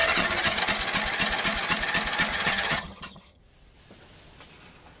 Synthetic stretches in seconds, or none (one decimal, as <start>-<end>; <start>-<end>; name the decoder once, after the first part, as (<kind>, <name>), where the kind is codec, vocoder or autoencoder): 0.0-0.6 (vocoder, HiFi-GAN); 2.3-3.4